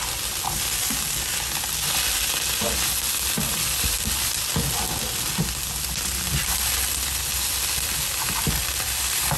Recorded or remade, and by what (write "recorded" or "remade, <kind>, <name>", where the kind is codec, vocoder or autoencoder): recorded